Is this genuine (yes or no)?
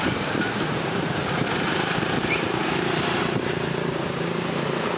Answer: no